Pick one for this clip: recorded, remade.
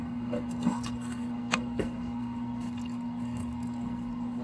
remade